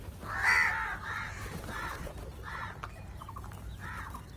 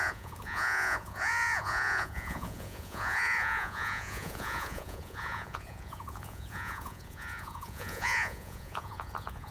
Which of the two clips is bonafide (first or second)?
first